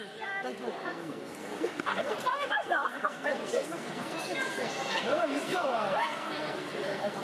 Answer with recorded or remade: remade